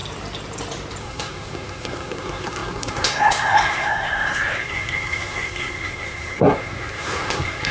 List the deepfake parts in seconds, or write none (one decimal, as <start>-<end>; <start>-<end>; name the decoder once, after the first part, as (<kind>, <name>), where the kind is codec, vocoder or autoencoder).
1.0-7.7 (codec, SNAC)